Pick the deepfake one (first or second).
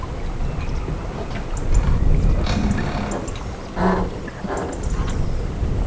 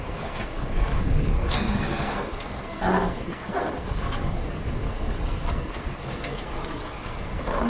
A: second